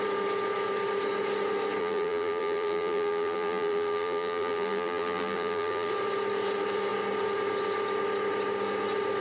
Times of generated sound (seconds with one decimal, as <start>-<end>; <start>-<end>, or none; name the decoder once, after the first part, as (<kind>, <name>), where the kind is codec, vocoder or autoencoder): 1.8-5.9 (vocoder, BigVGAN v2)